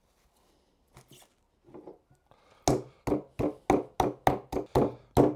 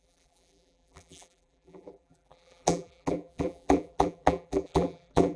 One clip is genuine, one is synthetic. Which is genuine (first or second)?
first